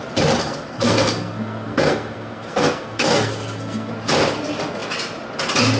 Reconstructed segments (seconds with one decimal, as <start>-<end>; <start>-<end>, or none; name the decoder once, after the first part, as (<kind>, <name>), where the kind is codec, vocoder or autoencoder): 0.4-3.9 (codec, SNAC)